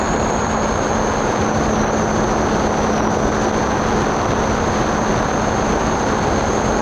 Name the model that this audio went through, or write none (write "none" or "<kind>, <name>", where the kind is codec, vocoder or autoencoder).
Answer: none